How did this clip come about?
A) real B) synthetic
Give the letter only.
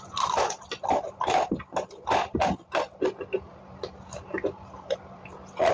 A